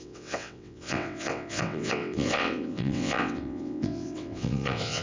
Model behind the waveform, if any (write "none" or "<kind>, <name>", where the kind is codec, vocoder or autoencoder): vocoder, WaveNeXt